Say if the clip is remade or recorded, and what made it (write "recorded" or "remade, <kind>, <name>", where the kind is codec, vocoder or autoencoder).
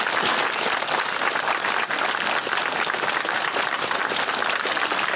recorded